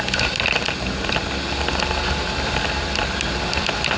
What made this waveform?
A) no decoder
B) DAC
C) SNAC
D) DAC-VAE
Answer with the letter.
A